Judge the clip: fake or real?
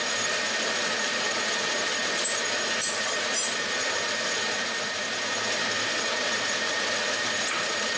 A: fake